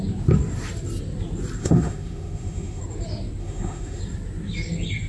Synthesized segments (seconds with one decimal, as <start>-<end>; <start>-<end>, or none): 1.6-2.8; 3.4-4.0

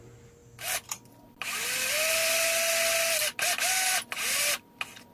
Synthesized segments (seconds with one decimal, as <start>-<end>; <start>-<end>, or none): none

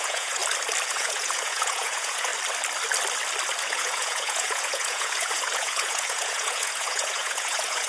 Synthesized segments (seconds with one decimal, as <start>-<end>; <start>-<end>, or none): 0.0-0.4; 0.9-2.3; 3.6-7.9

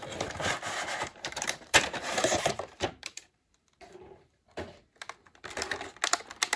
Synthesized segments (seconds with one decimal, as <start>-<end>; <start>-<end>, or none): 1.1-4.4

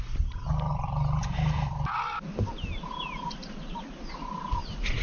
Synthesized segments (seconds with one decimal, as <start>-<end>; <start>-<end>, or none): none

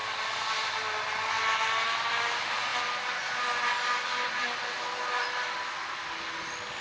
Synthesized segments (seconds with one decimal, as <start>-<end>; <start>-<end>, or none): none